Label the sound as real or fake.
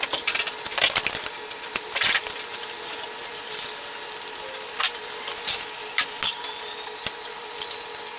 fake